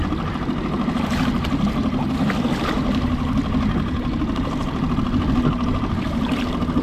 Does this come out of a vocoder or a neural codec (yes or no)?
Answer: no